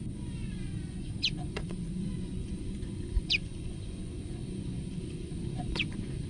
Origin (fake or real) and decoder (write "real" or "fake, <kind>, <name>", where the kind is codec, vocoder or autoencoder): fake, vocoder, Vocos